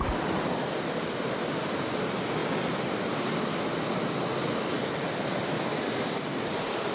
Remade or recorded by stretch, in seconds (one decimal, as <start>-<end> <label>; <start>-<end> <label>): 0.0-6.9 recorded